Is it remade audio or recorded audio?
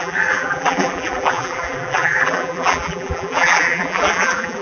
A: remade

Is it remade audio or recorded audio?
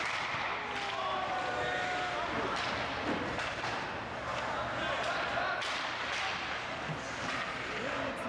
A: recorded